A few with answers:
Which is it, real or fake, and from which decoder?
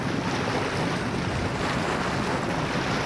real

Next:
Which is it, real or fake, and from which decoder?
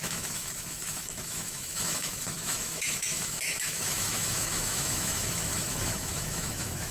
fake, autoencoder, DAC-VAE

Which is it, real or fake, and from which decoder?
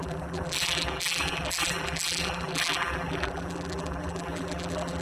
fake, vocoder, BigVGAN v2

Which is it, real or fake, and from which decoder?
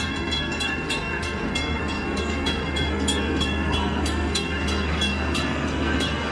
fake, codec, SNAC